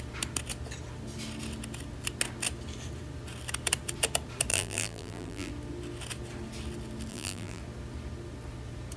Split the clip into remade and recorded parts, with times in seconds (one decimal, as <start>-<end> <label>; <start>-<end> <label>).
0.0-4.5 recorded; 4.5-5.5 remade; 5.5-7.1 recorded; 7.1-7.6 remade; 7.6-9.0 recorded